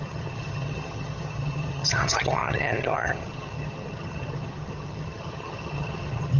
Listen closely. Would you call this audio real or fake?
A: fake